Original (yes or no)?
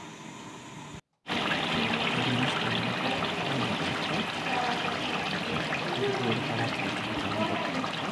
yes